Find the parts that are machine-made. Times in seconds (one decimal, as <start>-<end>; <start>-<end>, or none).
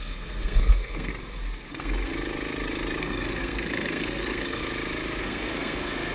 0.0-1.1; 1.7-2.1; 3.0-4.6; 5.2-6.1